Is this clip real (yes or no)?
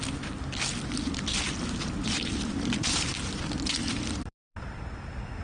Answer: no